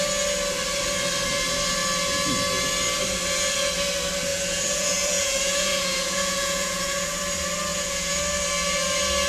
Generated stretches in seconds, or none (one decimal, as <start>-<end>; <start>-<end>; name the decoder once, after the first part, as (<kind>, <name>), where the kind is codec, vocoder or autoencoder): 4.3-7.2 (vocoder, Vocos); 7.7-8.2